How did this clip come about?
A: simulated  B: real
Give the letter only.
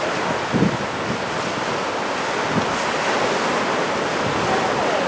B